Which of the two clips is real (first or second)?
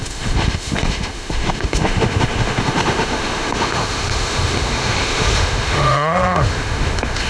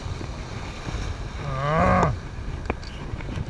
second